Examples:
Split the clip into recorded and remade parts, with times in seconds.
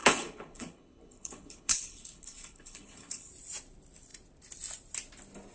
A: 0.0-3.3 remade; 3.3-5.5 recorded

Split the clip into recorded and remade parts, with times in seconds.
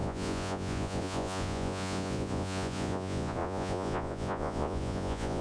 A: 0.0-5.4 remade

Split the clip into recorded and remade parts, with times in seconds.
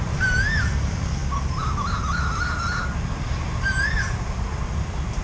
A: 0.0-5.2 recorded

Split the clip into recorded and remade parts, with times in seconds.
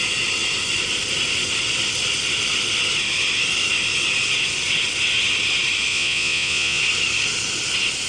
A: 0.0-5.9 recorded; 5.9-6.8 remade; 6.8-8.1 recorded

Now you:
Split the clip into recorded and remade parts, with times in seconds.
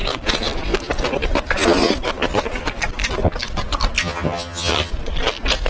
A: 0.0-4.0 recorded; 4.0-4.9 remade; 4.9-5.7 recorded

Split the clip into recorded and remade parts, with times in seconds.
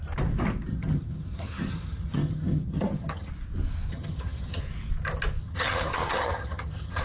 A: 0.0-0.7 recorded; 0.7-3.3 remade; 3.3-3.9 recorded; 3.9-4.6 remade; 4.6-5.4 recorded; 5.4-7.0 remade